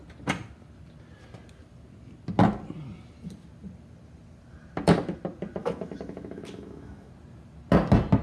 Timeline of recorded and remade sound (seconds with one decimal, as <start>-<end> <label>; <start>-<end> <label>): 0.0-5.6 recorded; 5.6-7.1 remade; 7.1-8.2 recorded